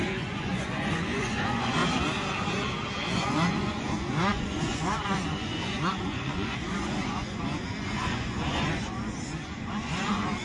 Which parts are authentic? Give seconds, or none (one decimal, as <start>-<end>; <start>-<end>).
1.8-3.1